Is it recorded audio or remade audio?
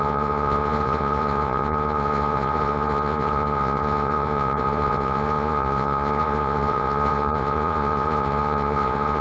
remade